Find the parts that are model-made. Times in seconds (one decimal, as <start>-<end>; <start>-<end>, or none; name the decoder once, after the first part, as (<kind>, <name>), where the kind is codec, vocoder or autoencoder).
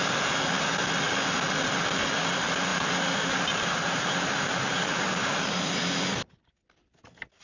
2.7-5.9 (vocoder, BigVGAN v2)